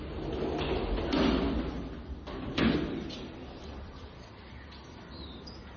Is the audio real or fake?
real